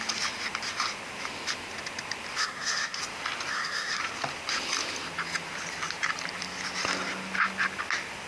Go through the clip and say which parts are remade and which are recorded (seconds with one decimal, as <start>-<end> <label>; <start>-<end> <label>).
0.0-2.4 recorded; 2.4-3.0 remade; 3.0-3.5 recorded; 3.5-4.0 remade; 4.0-8.3 recorded